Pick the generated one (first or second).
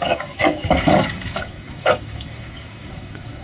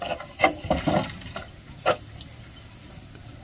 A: first